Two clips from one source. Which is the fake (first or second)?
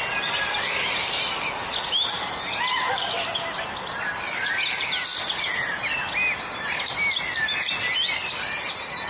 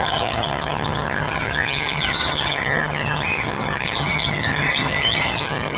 second